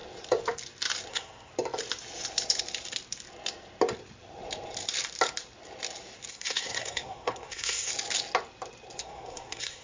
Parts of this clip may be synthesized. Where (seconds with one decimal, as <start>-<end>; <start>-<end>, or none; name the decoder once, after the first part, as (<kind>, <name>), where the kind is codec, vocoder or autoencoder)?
1.1-1.5 (codec, SNAC); 6.3-7.9; 9.0-9.8